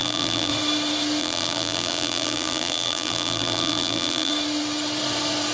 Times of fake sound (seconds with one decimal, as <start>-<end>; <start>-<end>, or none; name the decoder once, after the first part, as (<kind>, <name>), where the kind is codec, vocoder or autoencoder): 0.0-0.5 (vocoder, BigVGAN v2); 1.2-4.3